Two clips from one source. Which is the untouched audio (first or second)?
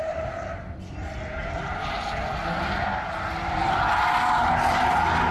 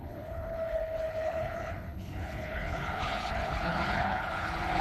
first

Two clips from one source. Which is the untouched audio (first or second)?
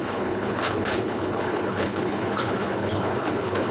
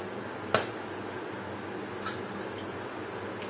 second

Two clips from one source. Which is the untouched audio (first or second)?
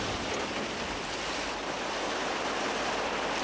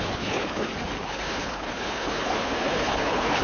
first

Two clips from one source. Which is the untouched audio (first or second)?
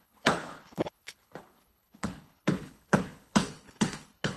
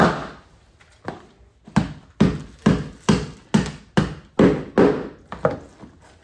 second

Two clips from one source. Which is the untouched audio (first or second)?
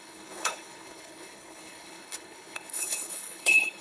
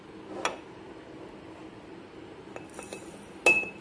second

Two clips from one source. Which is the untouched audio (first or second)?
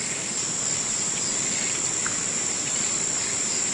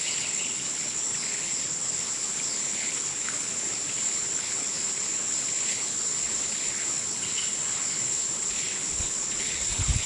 first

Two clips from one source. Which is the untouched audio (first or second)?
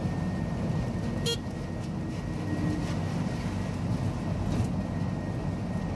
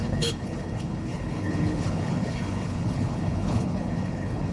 first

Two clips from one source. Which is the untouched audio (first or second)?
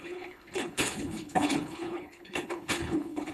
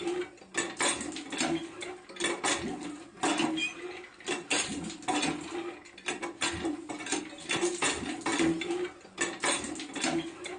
second